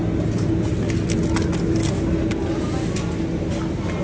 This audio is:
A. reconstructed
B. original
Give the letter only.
B